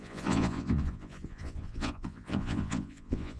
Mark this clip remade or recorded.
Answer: remade